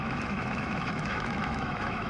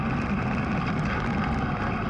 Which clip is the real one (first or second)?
second